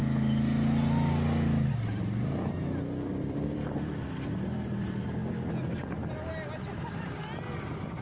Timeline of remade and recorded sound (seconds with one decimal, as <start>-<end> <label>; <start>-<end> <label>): 0.0-1.7 recorded; 1.7-5.2 remade; 5.2-7.5 recorded; 7.5-8.0 remade

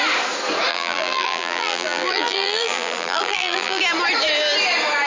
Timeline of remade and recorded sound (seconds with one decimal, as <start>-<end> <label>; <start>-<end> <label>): 0.0-0.7 recorded; 0.7-3.8 remade; 3.8-5.1 recorded

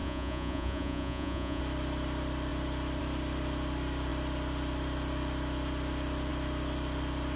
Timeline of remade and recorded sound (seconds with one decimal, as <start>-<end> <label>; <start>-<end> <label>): 0.0-1.6 remade; 1.6-7.4 recorded

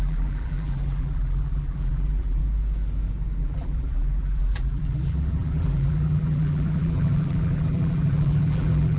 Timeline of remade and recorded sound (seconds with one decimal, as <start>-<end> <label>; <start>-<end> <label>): 0.0-2.4 remade; 2.4-3.4 recorded; 3.4-9.0 remade

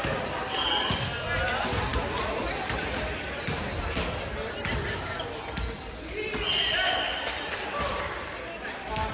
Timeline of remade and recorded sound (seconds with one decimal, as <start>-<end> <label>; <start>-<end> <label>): 0.0-9.1 recorded

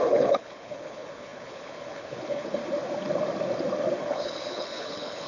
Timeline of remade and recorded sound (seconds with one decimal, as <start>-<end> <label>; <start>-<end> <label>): 0.0-2.6 remade; 2.6-4.0 recorded; 4.0-5.3 remade

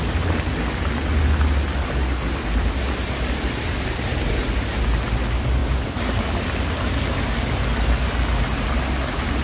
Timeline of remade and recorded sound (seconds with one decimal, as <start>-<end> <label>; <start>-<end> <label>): 0.0-9.4 recorded

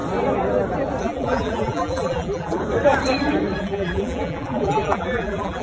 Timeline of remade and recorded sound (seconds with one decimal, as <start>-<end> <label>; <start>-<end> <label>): 0.0-1.0 recorded; 1.0-2.6 remade; 2.6-3.6 recorded; 3.6-5.6 remade